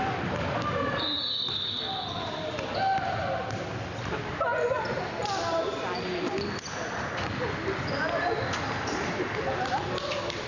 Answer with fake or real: real